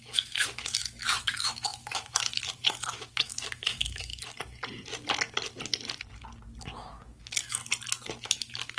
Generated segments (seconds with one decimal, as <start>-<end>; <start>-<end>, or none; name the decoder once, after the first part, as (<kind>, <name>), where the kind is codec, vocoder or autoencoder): 0.0-4.1 (autoencoder, DAC-VAE); 6.6-7.6; 8.2-8.8